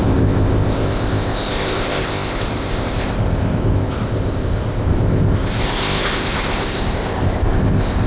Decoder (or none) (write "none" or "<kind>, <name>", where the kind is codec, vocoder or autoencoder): codec, ZipCodec